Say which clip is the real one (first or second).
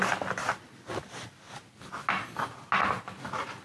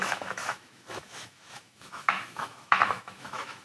first